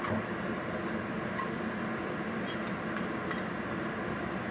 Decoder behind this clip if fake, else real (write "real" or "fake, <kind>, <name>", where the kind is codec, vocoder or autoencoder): real